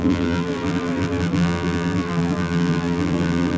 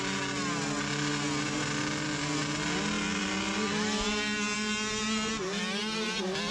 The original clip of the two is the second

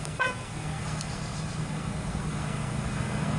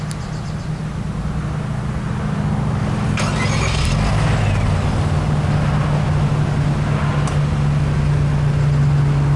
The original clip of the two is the second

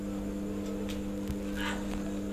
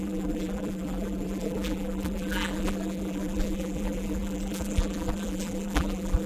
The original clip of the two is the first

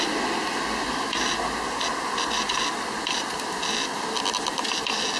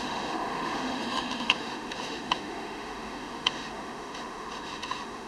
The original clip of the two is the first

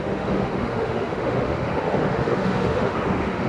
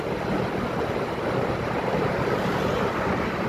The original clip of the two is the second